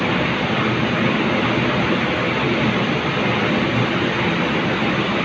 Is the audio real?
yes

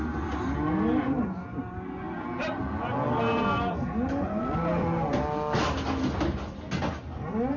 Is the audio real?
yes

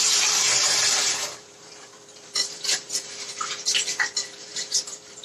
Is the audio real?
no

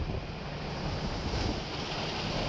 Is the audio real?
yes